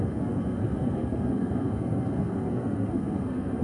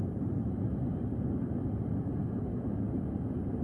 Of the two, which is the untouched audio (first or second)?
second